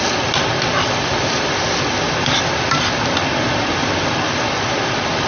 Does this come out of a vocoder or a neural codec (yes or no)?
no